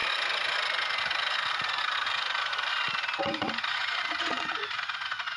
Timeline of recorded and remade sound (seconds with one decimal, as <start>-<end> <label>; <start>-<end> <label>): 0.0-3.2 recorded; 3.2-5.4 remade